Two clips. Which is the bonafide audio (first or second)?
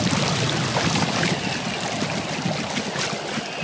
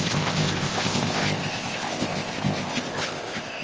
first